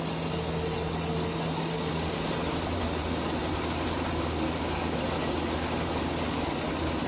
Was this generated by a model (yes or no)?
no